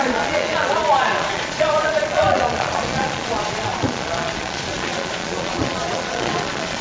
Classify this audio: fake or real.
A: fake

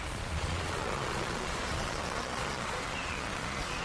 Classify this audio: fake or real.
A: fake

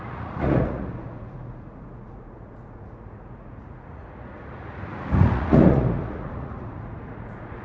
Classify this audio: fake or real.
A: fake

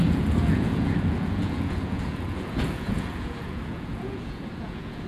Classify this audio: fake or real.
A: fake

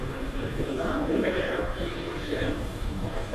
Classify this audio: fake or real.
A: fake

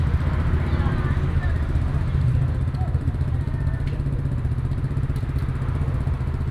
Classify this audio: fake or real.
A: real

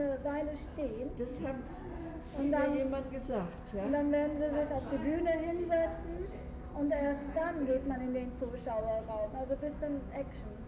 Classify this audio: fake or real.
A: real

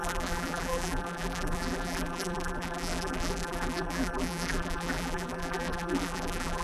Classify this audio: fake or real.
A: fake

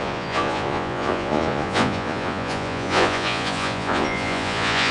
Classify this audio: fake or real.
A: fake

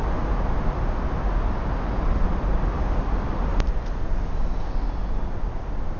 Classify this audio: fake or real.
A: real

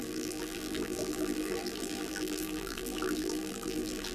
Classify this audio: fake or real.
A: fake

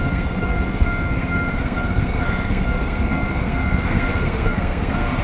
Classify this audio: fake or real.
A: fake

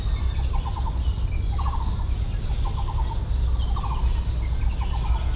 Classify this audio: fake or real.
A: real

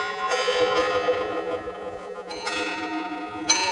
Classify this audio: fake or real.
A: fake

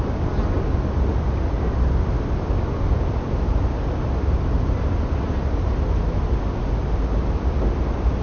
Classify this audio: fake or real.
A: real